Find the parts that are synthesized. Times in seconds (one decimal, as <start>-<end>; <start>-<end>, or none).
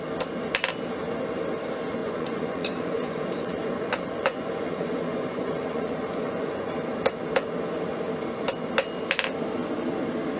2.0-6.7